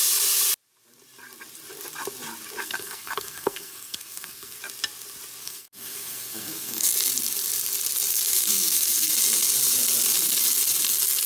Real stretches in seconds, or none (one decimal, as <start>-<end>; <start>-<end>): 0.0-2.6; 4.6-5.4; 6.9-8.1; 9.1-11.3